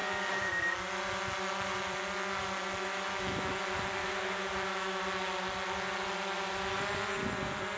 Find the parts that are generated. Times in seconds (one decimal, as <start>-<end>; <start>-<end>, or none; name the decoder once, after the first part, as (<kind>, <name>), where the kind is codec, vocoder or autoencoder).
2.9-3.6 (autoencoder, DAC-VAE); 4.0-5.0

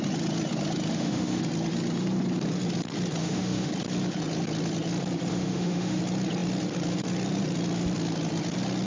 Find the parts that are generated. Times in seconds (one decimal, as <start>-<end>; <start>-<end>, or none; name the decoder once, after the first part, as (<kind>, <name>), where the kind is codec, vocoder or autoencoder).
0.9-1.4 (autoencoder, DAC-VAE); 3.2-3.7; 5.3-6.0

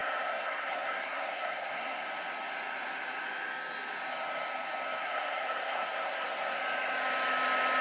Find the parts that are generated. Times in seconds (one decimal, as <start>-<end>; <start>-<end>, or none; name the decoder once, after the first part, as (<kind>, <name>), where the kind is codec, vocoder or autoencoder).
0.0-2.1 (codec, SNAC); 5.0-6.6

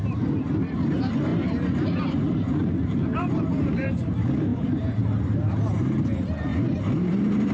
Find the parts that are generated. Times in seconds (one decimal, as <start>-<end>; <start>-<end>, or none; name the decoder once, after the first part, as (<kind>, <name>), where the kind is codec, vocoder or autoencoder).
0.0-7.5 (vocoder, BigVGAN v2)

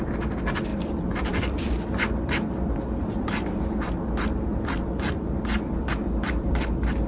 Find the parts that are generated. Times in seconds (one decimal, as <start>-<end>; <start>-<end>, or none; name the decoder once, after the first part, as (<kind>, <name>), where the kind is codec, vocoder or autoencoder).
0.7-3.8 (vocoder, BigVGAN v2); 6.0-7.1